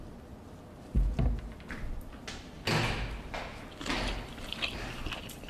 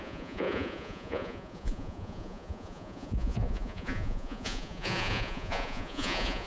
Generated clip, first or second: second